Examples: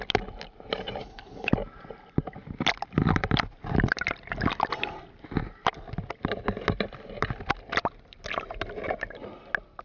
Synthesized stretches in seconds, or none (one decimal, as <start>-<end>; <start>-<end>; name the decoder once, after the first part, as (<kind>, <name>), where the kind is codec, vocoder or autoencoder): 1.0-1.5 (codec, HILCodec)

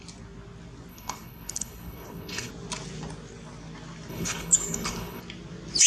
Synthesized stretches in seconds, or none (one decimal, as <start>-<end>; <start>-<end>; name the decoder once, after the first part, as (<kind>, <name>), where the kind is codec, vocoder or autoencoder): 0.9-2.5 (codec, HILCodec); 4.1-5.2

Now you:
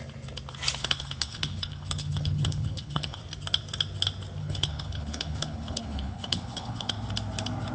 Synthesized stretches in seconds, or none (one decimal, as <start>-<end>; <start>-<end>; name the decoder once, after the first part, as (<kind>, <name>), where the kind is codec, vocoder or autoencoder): 0.8-3.2 (codec, HILCodec); 4.4-6.9

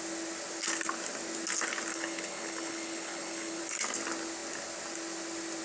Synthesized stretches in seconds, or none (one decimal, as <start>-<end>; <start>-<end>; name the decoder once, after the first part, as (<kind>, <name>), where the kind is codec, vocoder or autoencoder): 1.9-3.6 (codec, HILCodec)

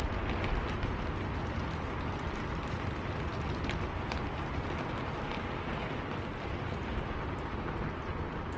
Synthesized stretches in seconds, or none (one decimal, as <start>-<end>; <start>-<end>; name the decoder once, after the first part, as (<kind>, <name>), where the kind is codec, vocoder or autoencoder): none

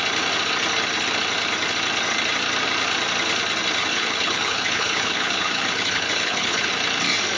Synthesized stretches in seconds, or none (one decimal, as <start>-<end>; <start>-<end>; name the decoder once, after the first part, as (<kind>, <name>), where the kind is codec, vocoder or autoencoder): 3.8-6.7 (codec, HILCodec)

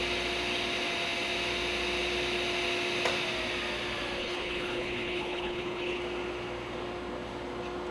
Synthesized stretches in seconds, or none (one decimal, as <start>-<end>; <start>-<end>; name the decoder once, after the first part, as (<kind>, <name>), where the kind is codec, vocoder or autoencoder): 4.2-6.0 (codec, HILCodec)